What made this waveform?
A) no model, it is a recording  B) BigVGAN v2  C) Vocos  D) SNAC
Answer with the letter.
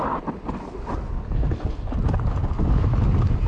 A